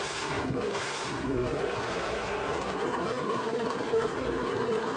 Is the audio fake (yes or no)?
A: yes